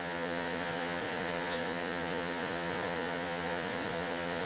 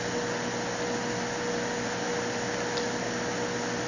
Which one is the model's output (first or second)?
first